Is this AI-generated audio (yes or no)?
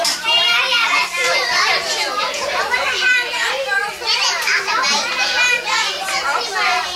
yes